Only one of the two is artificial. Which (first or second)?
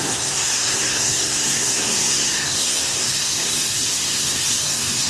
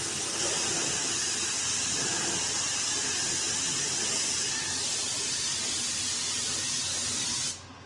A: first